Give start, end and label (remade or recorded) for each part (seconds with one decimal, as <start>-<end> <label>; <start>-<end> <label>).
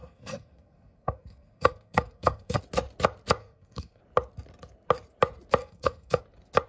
0.0-2.6 remade; 2.6-3.4 recorded; 3.4-4.0 remade; 4.0-5.6 recorded; 5.6-6.2 remade; 6.2-6.7 recorded